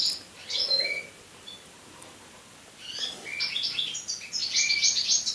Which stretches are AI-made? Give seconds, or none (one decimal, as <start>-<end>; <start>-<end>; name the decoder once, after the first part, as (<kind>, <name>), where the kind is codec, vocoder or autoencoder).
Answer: none

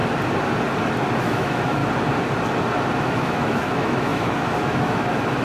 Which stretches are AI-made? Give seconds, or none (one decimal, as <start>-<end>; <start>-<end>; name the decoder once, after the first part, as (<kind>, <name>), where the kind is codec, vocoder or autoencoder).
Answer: 1.2-1.8 (autoencoder, DAC-VAE); 3.0-5.4

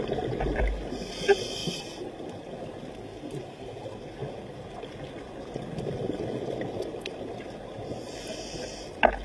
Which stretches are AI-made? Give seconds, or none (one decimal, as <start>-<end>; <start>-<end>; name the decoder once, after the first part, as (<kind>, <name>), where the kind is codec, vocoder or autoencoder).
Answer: 1.6-2.5 (vocoder, BigVGAN v2)

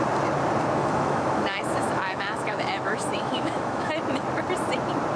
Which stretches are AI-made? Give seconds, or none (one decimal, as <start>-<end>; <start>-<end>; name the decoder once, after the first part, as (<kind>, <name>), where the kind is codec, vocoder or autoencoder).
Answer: 0.8-3.9 (autoencoder, DAC-VAE)

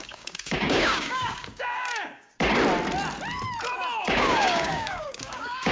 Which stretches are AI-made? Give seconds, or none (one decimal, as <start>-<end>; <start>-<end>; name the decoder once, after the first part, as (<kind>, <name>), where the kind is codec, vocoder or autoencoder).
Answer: 0.0-2.3 (codec, DAC); 4.0-5.7

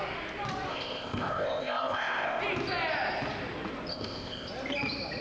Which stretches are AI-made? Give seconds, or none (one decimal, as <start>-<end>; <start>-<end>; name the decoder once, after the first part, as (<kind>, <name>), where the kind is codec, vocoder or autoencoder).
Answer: 0.7-2.4 (codec, ZipCodec); 3.9-4.5

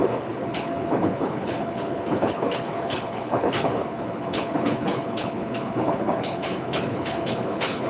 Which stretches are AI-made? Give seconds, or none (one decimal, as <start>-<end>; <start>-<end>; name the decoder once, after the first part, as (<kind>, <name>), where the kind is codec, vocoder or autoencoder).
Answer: 0.0-7.9 (codec, HILCodec)

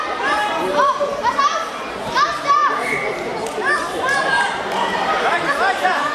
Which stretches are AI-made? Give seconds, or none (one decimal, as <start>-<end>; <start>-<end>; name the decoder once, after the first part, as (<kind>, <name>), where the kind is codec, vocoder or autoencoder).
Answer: 0.0-6.1 (vocoder, BigVGAN v2)